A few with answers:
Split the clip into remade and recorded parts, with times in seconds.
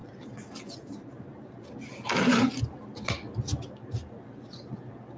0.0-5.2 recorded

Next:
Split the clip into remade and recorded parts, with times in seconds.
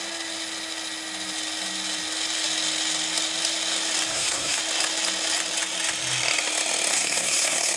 0.0-4.1 recorded; 4.1-4.6 remade; 4.6-6.9 recorded; 6.9-7.8 remade